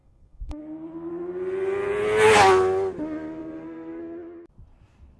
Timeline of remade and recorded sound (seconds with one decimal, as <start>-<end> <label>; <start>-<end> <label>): 0.0-0.6 remade; 0.6-3.4 recorded; 3.4-4.0 remade; 4.0-5.2 recorded